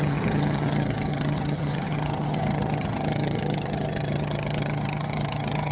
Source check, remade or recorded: remade